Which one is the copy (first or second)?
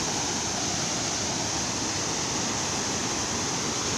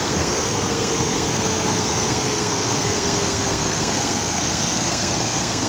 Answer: second